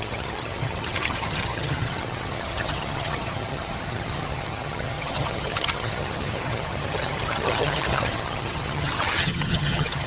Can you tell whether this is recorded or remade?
remade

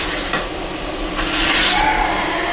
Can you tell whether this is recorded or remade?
recorded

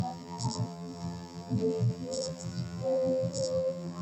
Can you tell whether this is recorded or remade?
remade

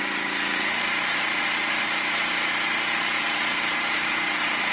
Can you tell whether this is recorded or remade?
recorded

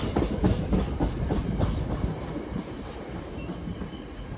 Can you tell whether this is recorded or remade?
recorded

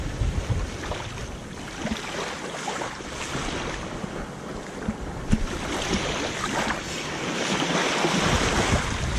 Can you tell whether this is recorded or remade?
recorded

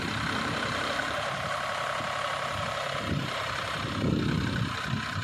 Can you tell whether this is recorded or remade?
remade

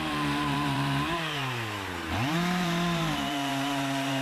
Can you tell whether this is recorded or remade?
remade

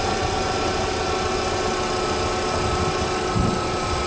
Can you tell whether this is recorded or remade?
recorded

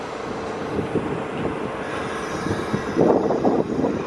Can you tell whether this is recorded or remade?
recorded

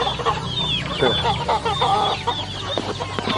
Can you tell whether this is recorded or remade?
recorded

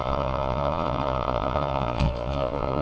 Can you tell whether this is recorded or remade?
remade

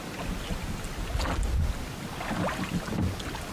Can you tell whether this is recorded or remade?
recorded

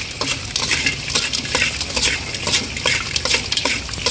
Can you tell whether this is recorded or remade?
recorded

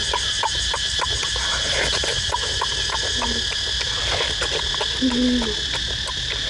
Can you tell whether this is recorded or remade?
recorded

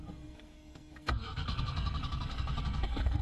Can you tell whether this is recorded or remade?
remade